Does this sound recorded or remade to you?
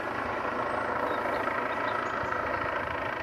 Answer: recorded